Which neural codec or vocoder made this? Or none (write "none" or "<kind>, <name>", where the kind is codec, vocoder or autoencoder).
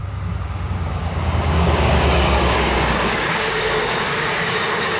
codec, DAC